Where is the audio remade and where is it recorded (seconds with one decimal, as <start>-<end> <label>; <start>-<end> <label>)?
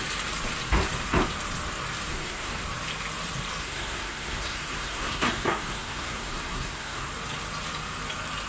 0.0-2.1 recorded; 2.1-2.6 remade; 2.6-3.6 recorded; 3.6-7.1 remade; 7.1-8.5 recorded